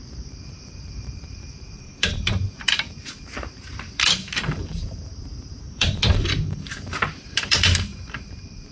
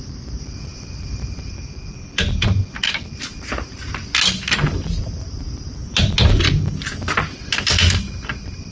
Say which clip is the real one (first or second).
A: second